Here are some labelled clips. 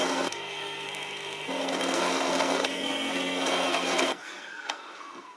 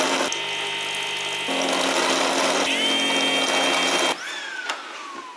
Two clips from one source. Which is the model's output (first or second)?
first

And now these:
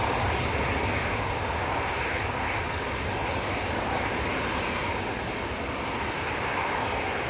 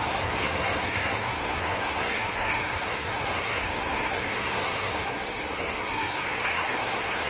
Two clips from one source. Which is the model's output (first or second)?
second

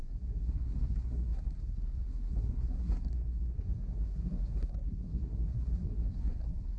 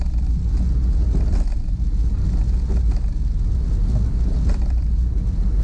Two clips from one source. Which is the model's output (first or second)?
first